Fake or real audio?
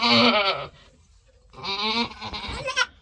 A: real